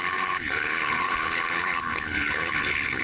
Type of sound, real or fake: fake